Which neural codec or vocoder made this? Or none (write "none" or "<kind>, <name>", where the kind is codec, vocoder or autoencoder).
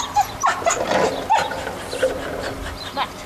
none